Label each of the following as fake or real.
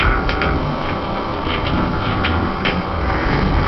fake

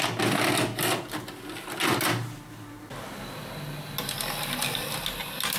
real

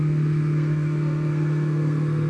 fake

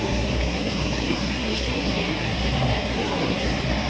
fake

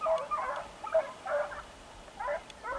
real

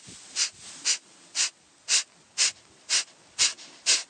real